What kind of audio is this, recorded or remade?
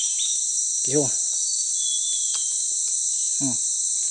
recorded